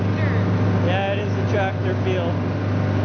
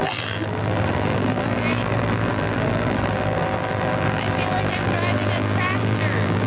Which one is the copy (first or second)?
second